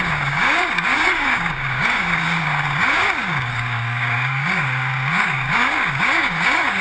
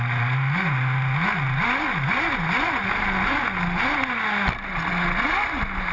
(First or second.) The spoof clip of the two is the first